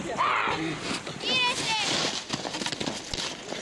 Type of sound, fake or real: real